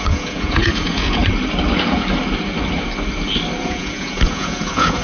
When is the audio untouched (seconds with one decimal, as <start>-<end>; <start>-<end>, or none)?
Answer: 1.2-3.6